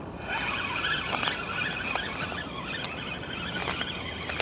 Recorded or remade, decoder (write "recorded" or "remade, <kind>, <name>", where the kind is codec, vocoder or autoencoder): recorded